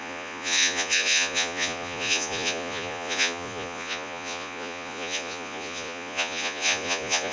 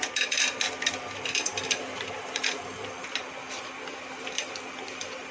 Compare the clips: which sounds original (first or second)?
second